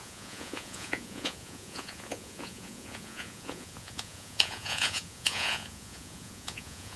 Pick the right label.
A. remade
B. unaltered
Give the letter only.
A